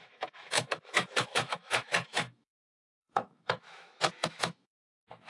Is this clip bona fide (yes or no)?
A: no